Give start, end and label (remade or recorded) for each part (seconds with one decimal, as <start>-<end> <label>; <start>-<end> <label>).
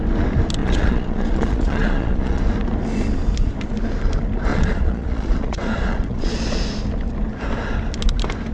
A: 0.0-0.6 recorded; 0.6-2.4 remade; 2.4-4.5 recorded; 4.5-6.6 remade; 6.6-8.5 recorded